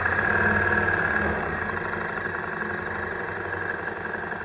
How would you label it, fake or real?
real